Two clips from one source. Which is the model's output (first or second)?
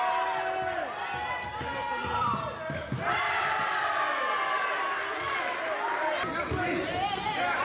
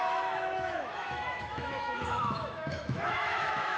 second